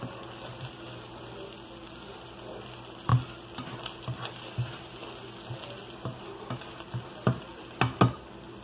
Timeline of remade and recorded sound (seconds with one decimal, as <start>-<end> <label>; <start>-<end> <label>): 0.0-8.6 recorded